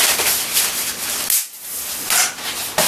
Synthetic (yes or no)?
no